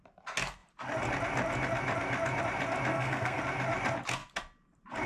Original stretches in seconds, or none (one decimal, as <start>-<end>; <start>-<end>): 0.0-2.9; 3.4-5.1

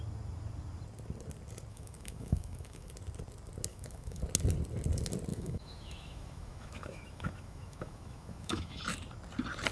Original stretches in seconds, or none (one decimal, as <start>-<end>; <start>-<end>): 0.0-1.7; 2.9-3.7; 4.2-5.3; 8.8-9.7

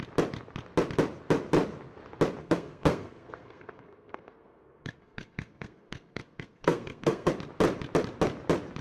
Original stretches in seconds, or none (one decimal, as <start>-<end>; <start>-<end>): 0.0-2.4; 7.3-8.8

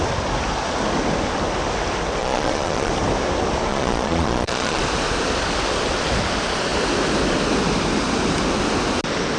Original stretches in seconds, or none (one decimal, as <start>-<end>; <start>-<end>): 0.0-2.2; 2.9-3.7; 4.8-9.4

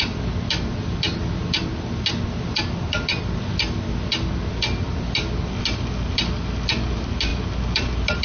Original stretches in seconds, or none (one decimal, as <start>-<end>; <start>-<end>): 0.0-8.2

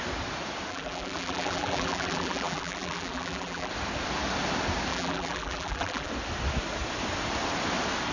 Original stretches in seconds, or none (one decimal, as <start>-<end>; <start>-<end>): 0.0-0.7; 3.7-4.9; 6.1-8.1